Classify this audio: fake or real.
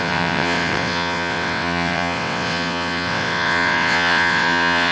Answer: fake